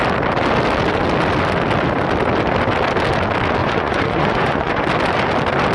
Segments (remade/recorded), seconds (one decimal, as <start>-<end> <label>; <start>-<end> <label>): 0.0-3.6 recorded; 3.6-4.7 remade; 4.7-5.7 recorded

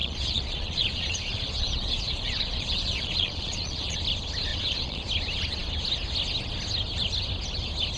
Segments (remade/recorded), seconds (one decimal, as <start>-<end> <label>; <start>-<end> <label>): 0.0-4.0 remade; 4.0-4.5 recorded; 4.5-5.1 remade; 5.1-8.0 recorded

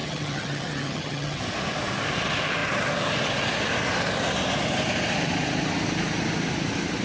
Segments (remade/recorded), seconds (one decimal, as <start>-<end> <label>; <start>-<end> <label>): 0.0-1.4 remade; 1.4-7.0 recorded

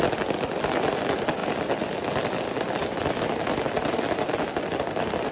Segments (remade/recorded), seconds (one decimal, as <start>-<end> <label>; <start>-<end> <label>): 0.0-5.3 recorded

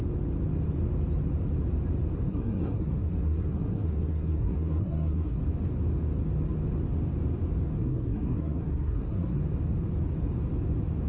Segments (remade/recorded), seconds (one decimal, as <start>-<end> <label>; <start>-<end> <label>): 0.0-2.3 recorded; 2.3-5.4 remade; 5.4-7.8 recorded; 7.8-9.4 remade; 9.4-11.1 recorded

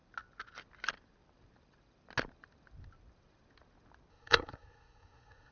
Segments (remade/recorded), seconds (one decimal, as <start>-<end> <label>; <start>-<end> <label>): 0.0-4.1 recorded; 4.1-5.5 remade